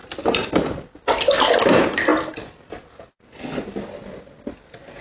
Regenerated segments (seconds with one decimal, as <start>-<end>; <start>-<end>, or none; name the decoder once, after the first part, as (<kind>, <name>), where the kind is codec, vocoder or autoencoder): none